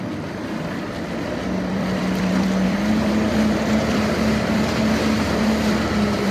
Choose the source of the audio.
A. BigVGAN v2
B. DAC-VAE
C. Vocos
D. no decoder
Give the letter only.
A